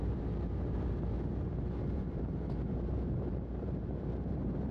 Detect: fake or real fake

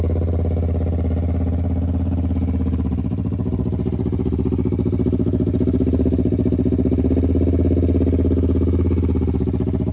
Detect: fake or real real